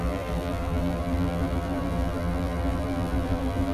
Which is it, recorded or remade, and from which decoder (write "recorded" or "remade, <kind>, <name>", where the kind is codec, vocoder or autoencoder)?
remade, vocoder, BigVGAN v2